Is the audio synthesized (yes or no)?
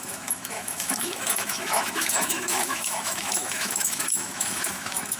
yes